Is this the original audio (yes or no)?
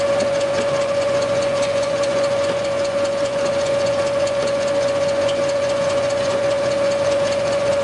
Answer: no